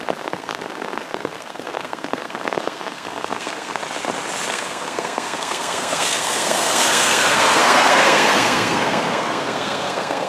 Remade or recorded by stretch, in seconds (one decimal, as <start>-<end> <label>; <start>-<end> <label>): 0.0-3.8 remade; 3.8-4.5 recorded; 4.5-10.3 remade